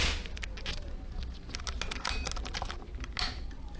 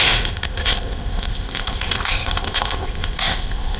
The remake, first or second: second